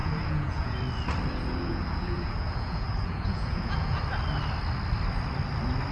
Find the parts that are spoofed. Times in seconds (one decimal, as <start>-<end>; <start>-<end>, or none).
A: 0.0-0.8; 1.3-4.0